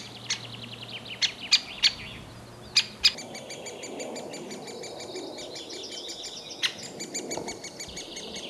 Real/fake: real